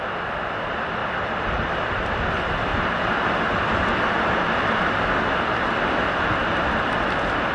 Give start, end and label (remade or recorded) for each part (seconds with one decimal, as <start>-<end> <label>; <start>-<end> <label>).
0.0-7.5 recorded